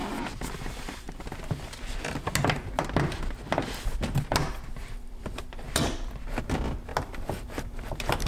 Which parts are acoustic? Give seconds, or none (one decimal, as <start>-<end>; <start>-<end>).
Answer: 1.2-4.8; 5.9-6.9